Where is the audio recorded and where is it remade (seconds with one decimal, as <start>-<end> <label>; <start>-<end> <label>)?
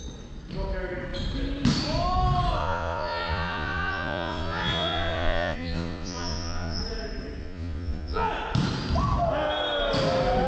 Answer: 0.0-2.6 recorded; 2.6-6.8 remade; 6.8-7.4 recorded; 7.4-8.3 remade; 8.3-10.5 recorded